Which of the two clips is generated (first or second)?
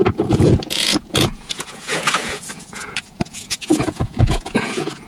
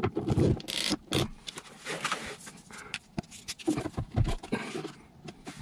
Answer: first